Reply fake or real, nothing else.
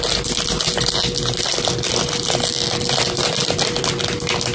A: real